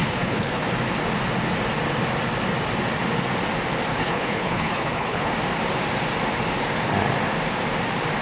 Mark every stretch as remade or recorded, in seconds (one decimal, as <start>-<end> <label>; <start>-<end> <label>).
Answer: 0.0-0.6 remade; 0.6-3.9 recorded; 3.9-5.3 remade; 5.3-8.2 recorded